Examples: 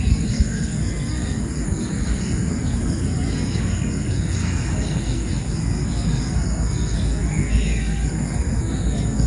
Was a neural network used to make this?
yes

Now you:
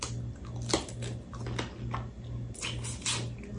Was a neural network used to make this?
no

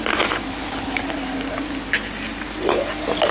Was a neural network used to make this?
no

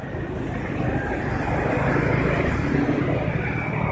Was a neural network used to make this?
no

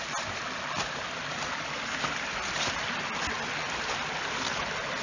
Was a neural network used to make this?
no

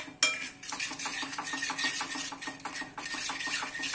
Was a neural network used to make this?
no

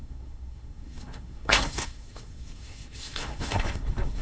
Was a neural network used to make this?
yes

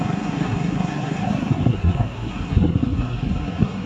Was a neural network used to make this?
yes